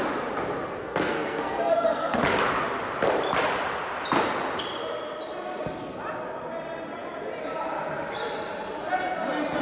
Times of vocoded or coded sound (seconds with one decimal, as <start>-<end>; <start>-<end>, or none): 0.8-2.2